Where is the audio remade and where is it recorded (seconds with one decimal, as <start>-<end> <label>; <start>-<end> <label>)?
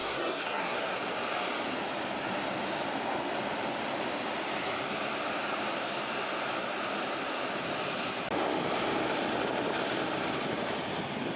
0.0-1.0 remade; 1.0-11.4 recorded